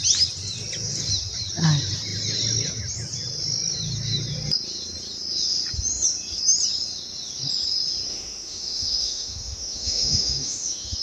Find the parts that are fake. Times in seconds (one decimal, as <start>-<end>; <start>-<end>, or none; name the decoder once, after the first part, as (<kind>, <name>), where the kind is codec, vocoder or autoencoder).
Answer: 8.1-11.0 (autoencoder, DAC-VAE)